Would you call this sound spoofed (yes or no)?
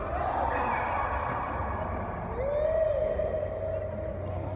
no